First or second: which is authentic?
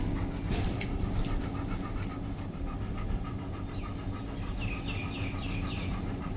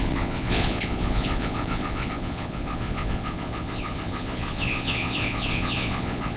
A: first